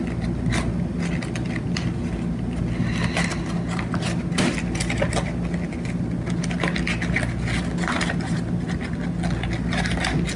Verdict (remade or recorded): recorded